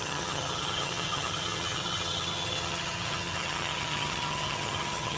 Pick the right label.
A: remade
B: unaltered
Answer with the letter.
A